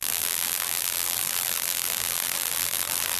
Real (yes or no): no